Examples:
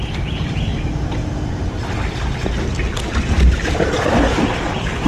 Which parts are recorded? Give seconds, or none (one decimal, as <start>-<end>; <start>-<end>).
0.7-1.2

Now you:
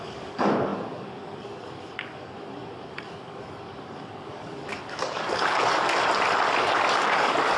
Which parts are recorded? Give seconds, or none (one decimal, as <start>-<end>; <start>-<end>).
6.0-6.6

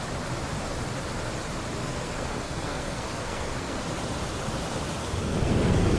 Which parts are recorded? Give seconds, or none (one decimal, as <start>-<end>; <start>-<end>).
0.0-1.8; 3.8-5.0

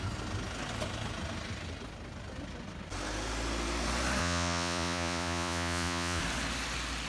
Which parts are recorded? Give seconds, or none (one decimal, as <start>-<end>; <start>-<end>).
0.0-4.2; 6.2-7.1